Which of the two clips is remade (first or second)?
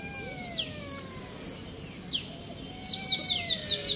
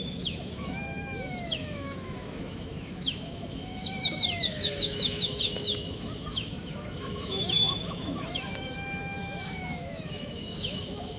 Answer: second